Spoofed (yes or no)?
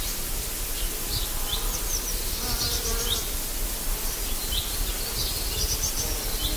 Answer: no